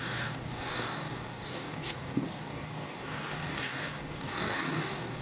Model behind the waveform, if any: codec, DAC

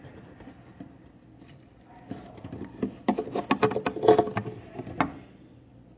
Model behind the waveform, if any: none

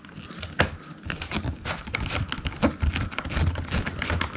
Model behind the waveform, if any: none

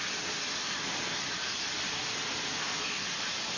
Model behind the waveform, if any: none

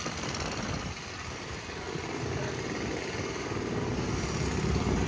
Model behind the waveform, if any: none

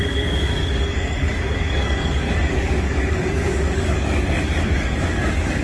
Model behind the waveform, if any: codec, DAC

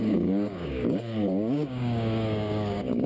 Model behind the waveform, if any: codec, DAC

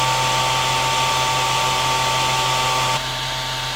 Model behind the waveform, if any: none